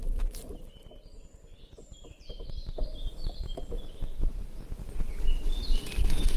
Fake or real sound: fake